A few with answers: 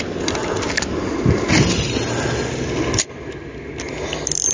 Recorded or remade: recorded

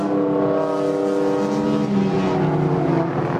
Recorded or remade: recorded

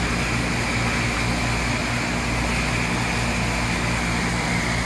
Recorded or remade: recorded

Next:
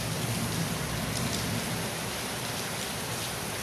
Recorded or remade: remade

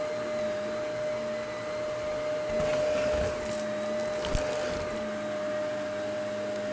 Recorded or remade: recorded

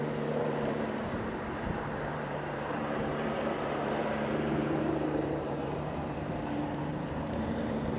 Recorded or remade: remade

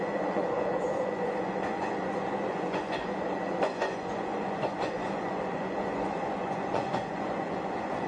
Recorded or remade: remade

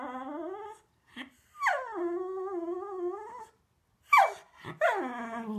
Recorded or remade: recorded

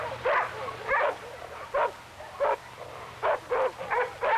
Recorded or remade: recorded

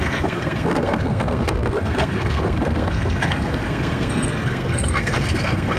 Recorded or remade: remade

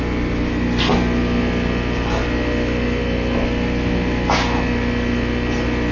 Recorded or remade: recorded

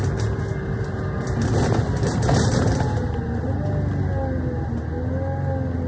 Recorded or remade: recorded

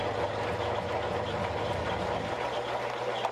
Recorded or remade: recorded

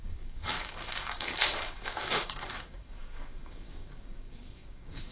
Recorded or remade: remade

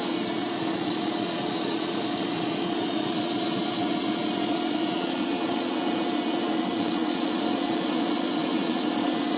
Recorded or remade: remade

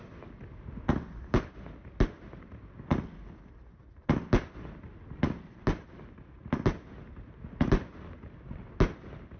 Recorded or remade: recorded